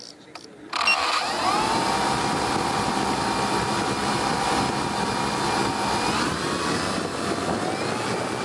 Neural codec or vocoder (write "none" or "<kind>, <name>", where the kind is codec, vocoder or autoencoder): none